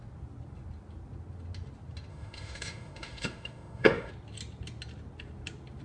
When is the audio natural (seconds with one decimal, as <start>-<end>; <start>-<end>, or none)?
0.0-2.1; 4.1-5.8